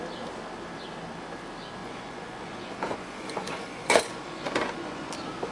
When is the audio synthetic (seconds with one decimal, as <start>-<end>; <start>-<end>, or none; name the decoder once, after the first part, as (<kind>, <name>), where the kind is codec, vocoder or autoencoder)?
1.8-5.1 (vocoder, Vocos)